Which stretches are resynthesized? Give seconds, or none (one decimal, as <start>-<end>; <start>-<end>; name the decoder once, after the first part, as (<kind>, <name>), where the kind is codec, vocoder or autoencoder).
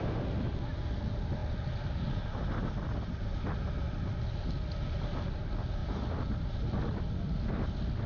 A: none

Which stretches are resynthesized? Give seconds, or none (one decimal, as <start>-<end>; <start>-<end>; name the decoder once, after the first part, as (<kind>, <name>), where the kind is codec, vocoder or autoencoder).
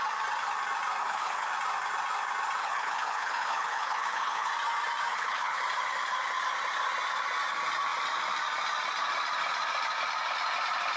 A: 1.0-1.5 (codec, HILCodec); 2.6-4.5; 5.1-5.6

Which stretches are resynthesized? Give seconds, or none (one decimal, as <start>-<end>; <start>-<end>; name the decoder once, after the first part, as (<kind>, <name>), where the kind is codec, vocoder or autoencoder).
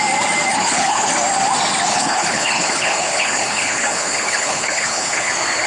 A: 0.5-1.1 (codec, HILCodec); 1.9-5.3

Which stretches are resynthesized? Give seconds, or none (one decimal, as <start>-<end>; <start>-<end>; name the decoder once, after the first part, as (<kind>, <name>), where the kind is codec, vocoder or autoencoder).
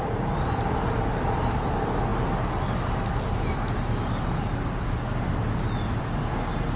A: none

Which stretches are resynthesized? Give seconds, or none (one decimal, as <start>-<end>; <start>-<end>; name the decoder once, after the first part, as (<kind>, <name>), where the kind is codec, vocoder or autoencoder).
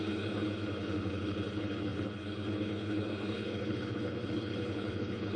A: 0.0-5.4 (codec, HILCodec)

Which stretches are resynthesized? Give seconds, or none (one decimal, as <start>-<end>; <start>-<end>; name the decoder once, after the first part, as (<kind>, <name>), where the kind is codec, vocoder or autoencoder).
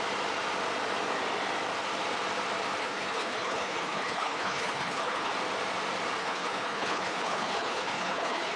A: 2.8-5.3 (codec, HILCodec); 6.2-8.6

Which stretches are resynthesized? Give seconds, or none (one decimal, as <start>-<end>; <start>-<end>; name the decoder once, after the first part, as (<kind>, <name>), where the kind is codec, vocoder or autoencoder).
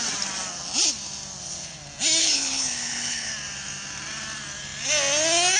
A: 2.2-3.3 (codec, HILCodec)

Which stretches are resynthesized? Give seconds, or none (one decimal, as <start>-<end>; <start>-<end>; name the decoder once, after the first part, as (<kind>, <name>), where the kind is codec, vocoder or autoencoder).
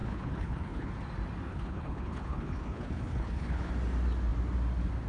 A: 0.0-0.9 (codec, HILCodec); 1.5-3.7